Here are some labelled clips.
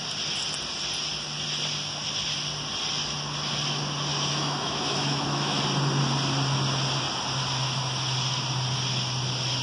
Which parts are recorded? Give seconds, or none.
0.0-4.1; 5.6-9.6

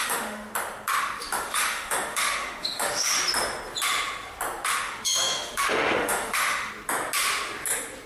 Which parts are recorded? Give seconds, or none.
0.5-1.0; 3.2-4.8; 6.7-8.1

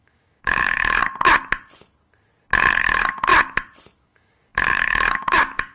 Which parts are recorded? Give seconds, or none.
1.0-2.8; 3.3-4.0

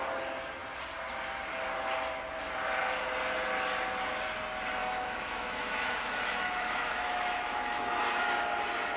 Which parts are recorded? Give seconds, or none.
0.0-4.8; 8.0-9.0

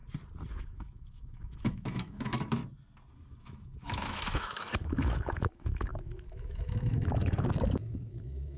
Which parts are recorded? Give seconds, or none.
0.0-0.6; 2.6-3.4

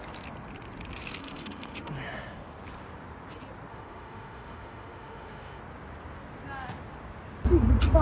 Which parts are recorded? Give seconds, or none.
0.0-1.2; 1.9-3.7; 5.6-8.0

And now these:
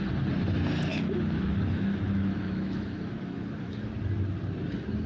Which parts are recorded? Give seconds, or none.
0.0-0.9; 3.9-5.1